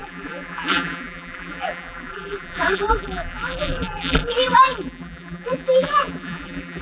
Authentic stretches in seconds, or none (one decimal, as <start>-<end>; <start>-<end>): none